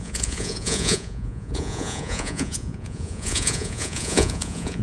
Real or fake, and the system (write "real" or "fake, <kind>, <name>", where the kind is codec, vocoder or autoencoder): fake, vocoder, Vocos